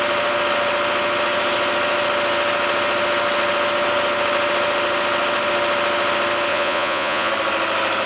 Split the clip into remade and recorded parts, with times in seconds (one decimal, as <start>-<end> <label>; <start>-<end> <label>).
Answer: 0.0-6.5 recorded; 6.5-7.3 remade; 7.3-8.1 recorded